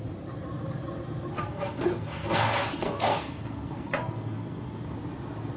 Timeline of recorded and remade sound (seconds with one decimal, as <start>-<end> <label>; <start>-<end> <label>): 0.0-1.3 recorded; 1.3-4.7 remade; 4.7-5.6 recorded